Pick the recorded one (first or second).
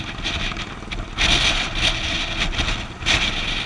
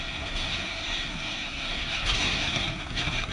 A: first